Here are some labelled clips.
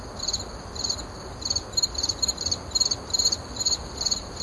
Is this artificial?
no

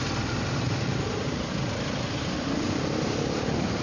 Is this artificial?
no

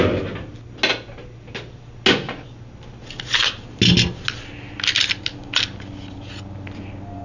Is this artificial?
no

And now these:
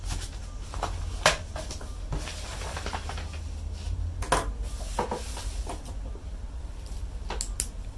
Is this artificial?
no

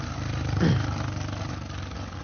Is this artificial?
no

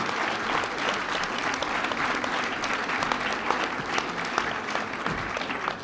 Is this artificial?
no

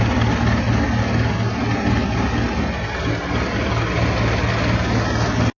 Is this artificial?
no